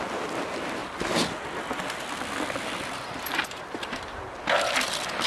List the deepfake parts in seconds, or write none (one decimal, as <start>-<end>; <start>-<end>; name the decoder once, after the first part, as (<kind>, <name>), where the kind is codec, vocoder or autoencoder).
none